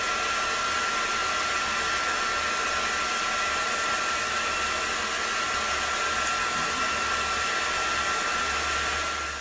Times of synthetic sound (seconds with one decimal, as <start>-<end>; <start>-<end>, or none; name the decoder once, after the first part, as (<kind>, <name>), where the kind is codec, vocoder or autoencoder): none